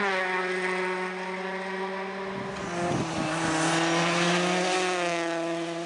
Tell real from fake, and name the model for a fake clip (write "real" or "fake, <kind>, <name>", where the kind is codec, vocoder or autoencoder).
real